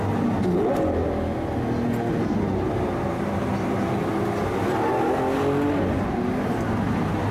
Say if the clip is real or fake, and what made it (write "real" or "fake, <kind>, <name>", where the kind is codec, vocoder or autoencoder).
real